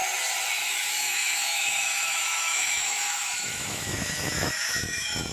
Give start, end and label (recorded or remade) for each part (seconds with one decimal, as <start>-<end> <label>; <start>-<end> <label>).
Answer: 0.0-0.7 recorded; 0.7-5.3 remade